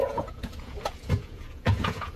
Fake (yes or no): yes